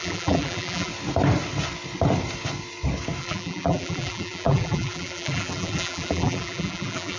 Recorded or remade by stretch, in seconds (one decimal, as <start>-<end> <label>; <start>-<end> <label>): 0.0-0.9 remade; 0.9-3.2 recorded; 3.2-7.2 remade